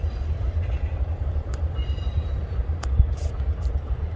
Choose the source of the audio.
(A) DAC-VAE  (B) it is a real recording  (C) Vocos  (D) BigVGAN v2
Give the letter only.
D